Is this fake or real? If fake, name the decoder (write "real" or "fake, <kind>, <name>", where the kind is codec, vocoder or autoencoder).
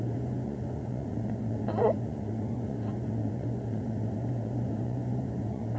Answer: fake, vocoder, Vocos